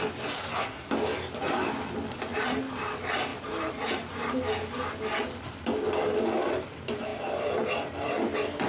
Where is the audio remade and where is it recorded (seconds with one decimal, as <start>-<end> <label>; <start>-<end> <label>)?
0.0-0.4 recorded; 0.4-0.9 remade; 0.9-8.7 recorded